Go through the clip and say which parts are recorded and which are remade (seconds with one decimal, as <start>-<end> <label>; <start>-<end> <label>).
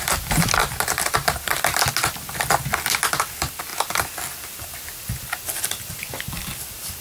0.0-0.6 recorded; 0.6-1.6 remade; 1.6-7.0 recorded